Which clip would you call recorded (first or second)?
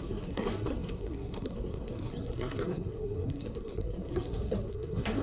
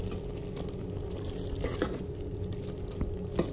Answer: second